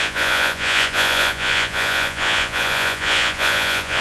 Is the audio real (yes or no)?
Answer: no